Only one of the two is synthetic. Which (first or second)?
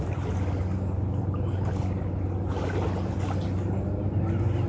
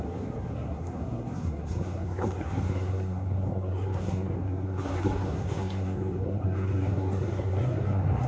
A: second